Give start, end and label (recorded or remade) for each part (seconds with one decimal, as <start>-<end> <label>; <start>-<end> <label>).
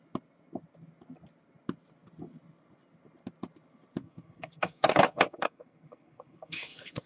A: 0.0-4.0 recorded; 4.0-7.1 remade